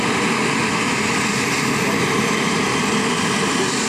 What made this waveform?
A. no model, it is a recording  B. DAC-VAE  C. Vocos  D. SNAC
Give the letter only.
A